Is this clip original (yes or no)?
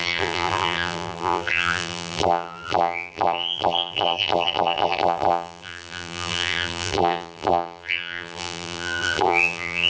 no